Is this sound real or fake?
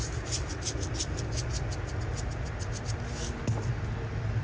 real